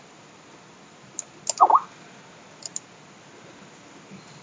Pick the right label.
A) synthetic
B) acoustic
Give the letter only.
B